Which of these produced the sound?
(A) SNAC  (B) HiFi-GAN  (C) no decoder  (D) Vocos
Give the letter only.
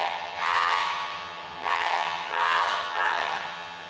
B